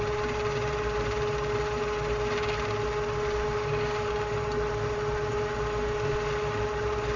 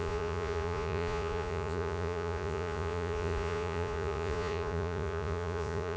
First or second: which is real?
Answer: first